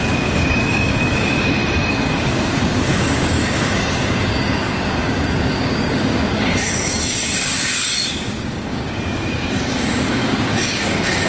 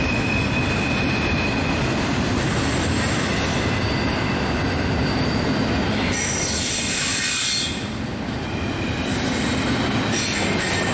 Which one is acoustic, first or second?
second